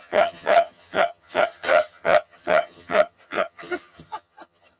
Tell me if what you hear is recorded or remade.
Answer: remade